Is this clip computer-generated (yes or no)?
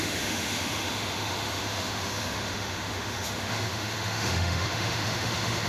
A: yes